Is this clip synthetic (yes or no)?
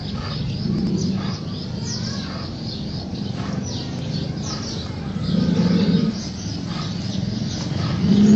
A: no